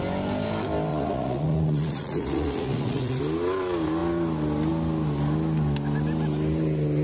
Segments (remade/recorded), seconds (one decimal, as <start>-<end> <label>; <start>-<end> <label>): 0.0-0.9 recorded; 0.9-3.2 remade; 3.2-7.0 recorded